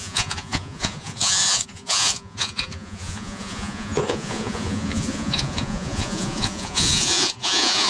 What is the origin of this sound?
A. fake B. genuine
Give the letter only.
A